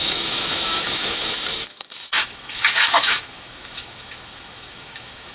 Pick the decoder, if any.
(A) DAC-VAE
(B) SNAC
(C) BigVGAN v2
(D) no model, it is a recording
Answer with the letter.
A